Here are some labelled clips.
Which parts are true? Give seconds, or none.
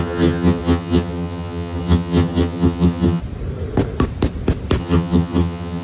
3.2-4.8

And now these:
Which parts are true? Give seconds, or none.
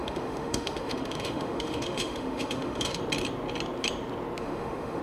3.0-4.4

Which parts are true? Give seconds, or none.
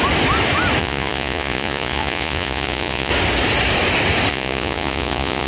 0.0-0.8; 3.1-4.3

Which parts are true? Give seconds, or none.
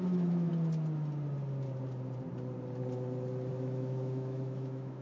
0.5-3.5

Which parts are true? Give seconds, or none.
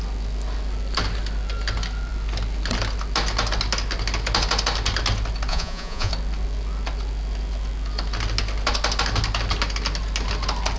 0.0-5.5; 6.1-10.8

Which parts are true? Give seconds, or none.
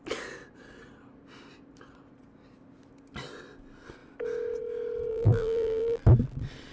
0.0-5.1; 6.0-6.7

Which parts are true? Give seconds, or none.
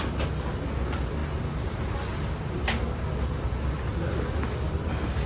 0.0-5.3